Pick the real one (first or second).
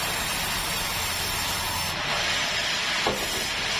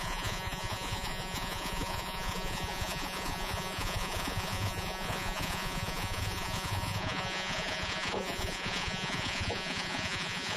first